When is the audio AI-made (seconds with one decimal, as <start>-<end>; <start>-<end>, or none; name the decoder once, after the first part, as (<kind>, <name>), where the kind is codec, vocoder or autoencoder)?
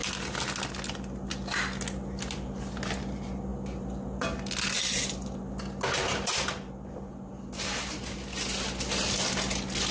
none